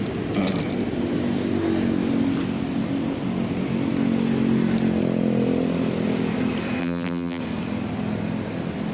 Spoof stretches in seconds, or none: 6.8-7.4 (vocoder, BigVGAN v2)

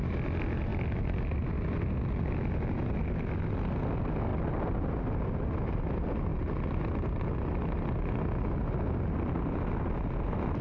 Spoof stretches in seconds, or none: 4.3-5.4 (vocoder, BigVGAN v2)

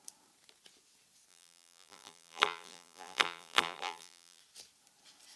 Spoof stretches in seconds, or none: 1.3-4.4 (vocoder, BigVGAN v2)